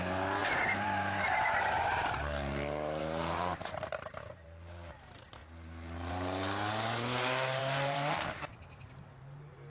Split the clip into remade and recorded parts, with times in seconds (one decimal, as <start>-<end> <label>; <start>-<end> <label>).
0.0-0.4 recorded; 0.4-2.0 remade; 2.0-3.0 recorded; 3.0-4.9 remade; 4.9-7.6 recorded; 7.6-9.0 remade; 9.0-9.7 recorded

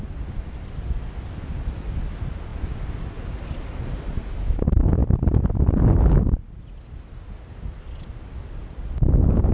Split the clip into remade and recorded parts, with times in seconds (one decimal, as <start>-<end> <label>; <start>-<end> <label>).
0.0-9.5 recorded

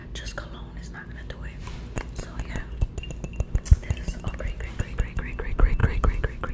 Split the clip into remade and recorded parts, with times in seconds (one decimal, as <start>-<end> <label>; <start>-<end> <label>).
0.0-6.5 recorded